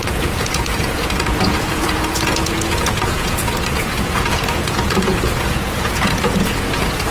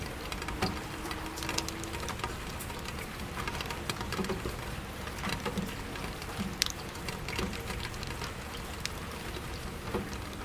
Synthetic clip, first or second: first